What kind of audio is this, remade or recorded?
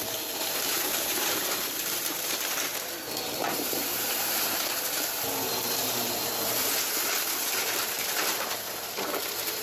remade